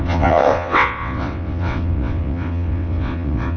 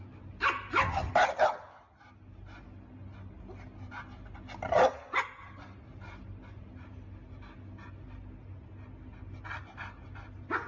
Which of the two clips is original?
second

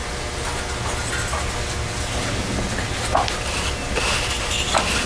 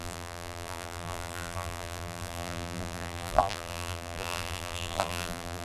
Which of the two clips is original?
first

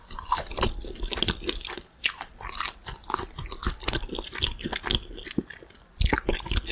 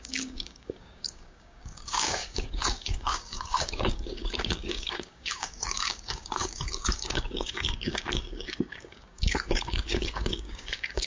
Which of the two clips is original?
first